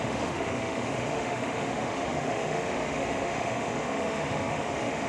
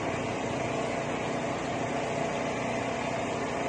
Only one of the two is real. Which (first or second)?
second